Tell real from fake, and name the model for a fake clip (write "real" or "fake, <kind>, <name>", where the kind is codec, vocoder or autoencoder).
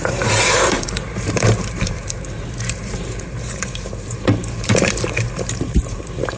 fake, vocoder, BigVGAN v2